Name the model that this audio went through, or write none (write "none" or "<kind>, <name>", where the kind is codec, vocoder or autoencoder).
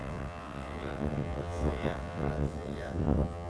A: vocoder, WaveNeXt